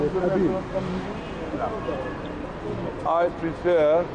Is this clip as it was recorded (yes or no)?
yes